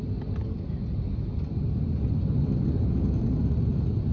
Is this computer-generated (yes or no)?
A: no